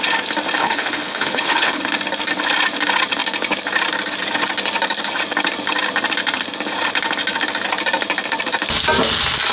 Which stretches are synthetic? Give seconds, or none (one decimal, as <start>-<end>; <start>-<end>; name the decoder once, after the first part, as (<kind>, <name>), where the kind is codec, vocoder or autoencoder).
0.6-1.8 (codec, HILCodec)